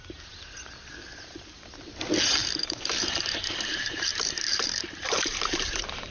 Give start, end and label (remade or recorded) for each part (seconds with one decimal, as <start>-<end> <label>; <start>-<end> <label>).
0.0-2.4 recorded; 2.4-6.1 remade